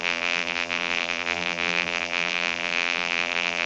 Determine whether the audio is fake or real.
fake